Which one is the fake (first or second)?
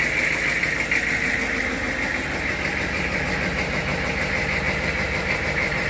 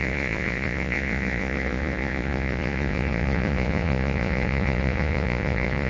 second